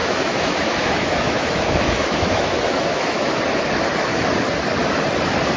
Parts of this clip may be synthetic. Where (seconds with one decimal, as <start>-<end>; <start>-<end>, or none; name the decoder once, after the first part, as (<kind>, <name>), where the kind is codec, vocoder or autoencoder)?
0.0-3.4 (autoencoder, DAC-VAE)